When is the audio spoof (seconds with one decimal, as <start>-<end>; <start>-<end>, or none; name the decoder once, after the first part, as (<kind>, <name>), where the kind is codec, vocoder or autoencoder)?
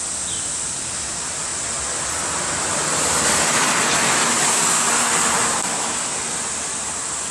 none